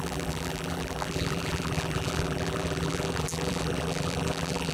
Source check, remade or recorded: remade